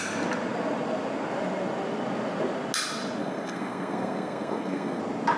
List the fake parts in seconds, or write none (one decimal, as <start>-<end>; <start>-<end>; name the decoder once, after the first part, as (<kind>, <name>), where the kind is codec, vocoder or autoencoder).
3.2-5.0 (codec, SNAC)